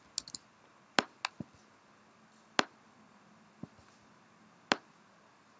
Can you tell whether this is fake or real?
real